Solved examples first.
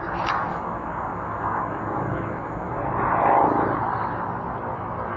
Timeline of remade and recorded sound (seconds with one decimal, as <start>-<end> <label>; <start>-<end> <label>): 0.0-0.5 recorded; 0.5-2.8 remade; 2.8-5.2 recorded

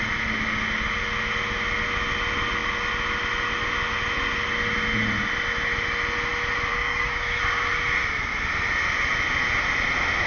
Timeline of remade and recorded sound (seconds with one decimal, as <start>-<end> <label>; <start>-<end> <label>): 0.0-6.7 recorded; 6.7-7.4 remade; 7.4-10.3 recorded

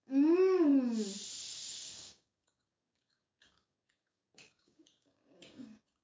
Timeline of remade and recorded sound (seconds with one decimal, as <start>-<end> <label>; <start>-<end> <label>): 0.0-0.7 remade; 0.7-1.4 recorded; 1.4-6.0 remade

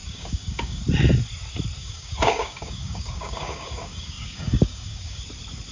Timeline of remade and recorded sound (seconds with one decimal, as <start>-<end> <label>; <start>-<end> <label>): 0.0-0.8 remade; 0.8-1.8 recorded; 1.8-5.2 remade; 5.2-5.7 recorded

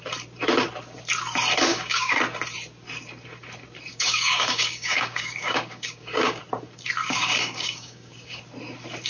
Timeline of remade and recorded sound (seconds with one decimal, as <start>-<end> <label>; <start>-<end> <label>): 0.0-1.7 recorded; 1.7-2.2 remade; 2.2-3.9 recorded; 3.9-6.4 remade; 6.4-7.0 recorded; 7.0-8.4 remade; 8.4-9.1 recorded

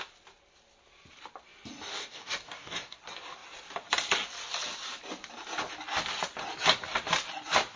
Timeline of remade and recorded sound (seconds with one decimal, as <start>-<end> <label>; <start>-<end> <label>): 0.0-1.9 recorded; 1.9-3.0 remade; 3.0-7.8 recorded

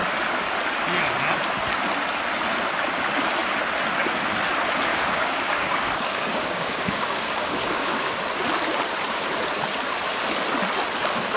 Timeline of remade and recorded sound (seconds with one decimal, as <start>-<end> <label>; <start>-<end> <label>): 0.0-4.9 recorded; 4.9-8.1 remade; 8.1-11.4 recorded

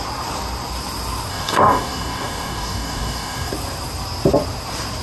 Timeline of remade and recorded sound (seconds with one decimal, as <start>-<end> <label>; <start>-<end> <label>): 0.0-1.3 recorded; 1.3-3.5 remade; 3.5-5.0 recorded